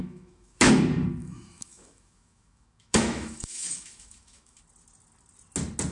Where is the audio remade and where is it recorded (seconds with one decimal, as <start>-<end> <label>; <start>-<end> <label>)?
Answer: 0.0-0.7 remade; 0.7-1.2 recorded; 1.2-4.6 remade; 4.6-5.9 recorded